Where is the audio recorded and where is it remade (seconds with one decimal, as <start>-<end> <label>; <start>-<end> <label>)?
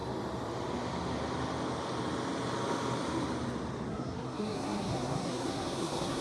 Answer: 0.0-3.9 recorded; 3.9-6.2 remade